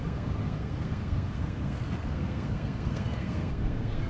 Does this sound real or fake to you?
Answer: fake